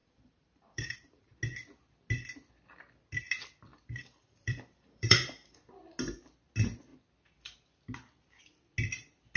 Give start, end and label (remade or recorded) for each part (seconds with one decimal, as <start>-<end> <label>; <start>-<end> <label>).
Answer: 0.0-1.4 remade; 1.4-3.7 recorded; 3.7-5.7 remade; 5.7-9.4 recorded